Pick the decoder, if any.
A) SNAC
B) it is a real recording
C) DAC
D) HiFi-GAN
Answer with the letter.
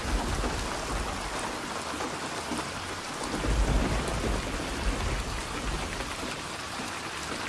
B